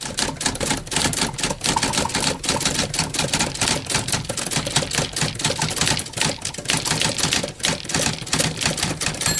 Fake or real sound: real